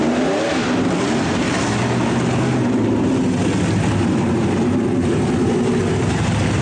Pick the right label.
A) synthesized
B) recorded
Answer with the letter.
B